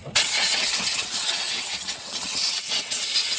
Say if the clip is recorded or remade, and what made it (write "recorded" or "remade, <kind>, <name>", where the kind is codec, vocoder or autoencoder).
remade, vocoder, WaveNeXt